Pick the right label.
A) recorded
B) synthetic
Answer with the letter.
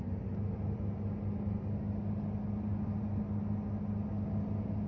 A